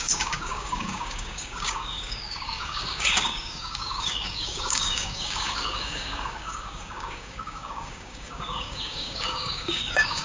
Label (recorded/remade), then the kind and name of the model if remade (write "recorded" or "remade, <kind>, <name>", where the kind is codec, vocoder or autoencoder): remade, codec, DAC